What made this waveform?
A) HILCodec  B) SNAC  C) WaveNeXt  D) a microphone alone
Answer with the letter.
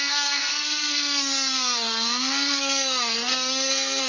B